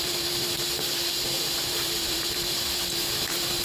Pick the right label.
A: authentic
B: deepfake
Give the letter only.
B